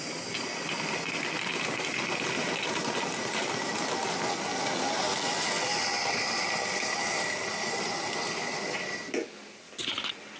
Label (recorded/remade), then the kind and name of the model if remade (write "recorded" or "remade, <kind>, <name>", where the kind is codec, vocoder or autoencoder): recorded